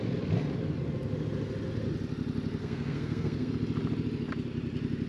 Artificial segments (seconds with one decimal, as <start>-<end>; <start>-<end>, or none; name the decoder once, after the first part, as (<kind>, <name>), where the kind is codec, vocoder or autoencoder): 2.6-3.5 (codec, SNAC)